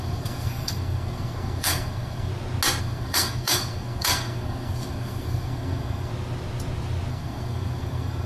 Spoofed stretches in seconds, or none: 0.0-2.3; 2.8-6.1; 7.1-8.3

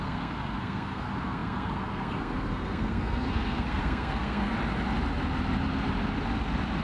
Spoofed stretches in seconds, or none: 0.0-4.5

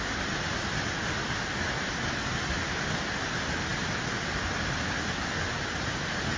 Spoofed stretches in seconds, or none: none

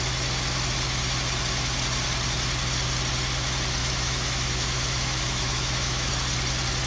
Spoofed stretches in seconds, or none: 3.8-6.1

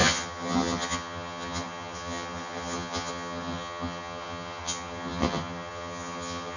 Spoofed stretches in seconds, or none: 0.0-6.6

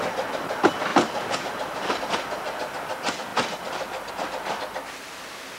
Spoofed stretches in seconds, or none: 0.9-2.0